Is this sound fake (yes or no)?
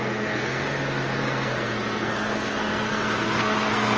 yes